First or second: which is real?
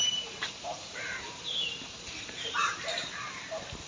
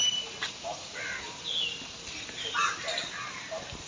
second